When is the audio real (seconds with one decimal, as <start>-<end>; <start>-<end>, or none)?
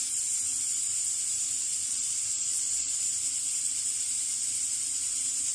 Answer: 0.0-1.9; 2.9-5.5